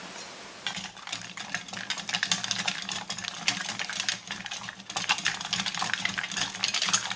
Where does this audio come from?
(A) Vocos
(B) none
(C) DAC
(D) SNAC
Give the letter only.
B